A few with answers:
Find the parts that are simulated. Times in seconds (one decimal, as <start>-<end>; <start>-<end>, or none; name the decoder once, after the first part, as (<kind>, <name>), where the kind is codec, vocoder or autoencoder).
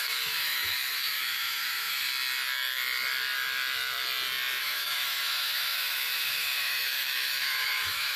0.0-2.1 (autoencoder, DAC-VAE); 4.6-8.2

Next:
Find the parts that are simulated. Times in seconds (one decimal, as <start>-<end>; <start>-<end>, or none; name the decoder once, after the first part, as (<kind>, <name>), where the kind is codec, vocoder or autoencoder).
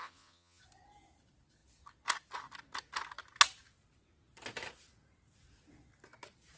0.0-0.6 (vocoder, Vocos)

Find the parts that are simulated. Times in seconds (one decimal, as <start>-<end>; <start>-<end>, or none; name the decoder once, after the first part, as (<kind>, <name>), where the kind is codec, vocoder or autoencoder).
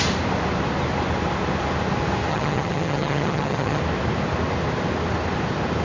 2.3-3.8 (vocoder, HiFi-GAN)